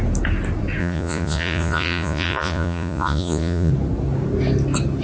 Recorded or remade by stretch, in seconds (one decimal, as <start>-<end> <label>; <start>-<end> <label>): 0.0-0.8 recorded; 0.8-3.7 remade; 3.7-5.0 recorded